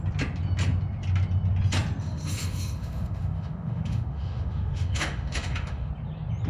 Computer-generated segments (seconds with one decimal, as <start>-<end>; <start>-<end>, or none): 2.0-5.9